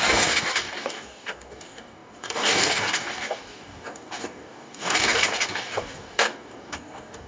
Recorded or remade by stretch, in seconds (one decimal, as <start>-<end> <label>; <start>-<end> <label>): 0.0-7.3 remade